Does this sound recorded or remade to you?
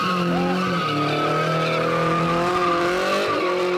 recorded